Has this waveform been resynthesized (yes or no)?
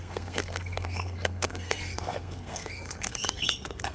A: yes